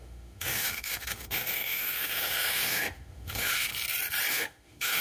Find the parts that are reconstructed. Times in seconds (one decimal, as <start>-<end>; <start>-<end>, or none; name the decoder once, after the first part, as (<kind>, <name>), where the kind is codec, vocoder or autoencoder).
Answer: 0.0-3.7 (autoencoder, DAC-VAE); 4.3-5.0

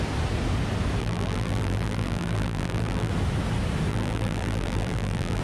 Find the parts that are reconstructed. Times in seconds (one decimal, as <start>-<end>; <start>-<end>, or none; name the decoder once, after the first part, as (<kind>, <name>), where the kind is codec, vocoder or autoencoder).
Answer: 1.0-3.1 (vocoder, BigVGAN v2); 3.9-5.4

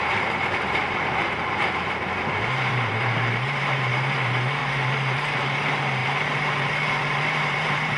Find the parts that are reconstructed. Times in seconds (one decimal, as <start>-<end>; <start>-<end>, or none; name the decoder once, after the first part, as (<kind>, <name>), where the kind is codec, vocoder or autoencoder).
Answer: 0.0-4.6 (vocoder, BigVGAN v2); 5.3-8.0

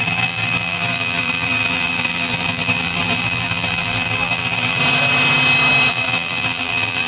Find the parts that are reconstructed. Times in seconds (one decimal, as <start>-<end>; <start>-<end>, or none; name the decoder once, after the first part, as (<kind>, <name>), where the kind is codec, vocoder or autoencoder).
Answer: 0.0-4.8 (vocoder, BigVGAN v2); 5.9-7.1

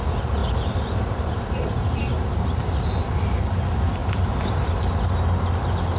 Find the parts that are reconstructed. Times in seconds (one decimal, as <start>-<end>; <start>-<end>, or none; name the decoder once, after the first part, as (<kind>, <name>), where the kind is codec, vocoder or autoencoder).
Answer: 0.4-2.9 (vocoder, BigVGAN v2); 4.0-4.8

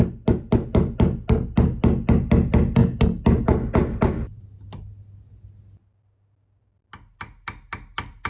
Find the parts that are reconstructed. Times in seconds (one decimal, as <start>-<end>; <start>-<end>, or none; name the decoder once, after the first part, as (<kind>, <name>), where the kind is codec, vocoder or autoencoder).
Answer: none

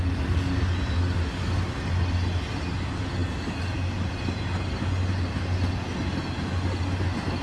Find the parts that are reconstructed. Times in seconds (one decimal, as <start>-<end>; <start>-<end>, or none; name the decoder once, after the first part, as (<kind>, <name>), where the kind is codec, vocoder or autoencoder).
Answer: none